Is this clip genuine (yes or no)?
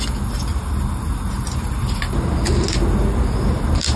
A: yes